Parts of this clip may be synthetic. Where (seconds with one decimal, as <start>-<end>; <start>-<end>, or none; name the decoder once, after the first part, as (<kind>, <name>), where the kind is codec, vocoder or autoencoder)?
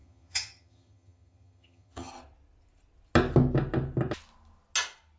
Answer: 0.0-2.1 (vocoder, HiFi-GAN)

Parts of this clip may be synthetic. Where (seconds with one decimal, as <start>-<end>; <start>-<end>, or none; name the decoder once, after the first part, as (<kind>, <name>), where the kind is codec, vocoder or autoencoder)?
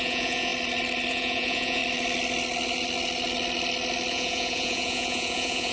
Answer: 0.0-0.5 (vocoder, Vocos); 1.1-1.8; 4.1-5.7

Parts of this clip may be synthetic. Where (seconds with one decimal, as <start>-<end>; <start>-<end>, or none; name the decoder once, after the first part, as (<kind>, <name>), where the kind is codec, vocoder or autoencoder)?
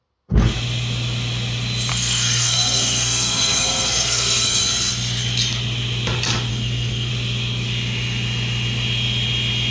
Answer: 1.9-4.6 (codec, SNAC); 6.5-7.1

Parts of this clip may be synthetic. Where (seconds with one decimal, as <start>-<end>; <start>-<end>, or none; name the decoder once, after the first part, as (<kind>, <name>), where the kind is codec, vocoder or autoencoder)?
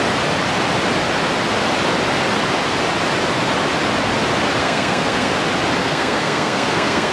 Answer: 4.6-5.3 (codec, SNAC); 5.8-7.1